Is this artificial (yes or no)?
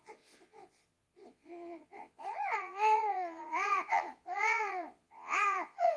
yes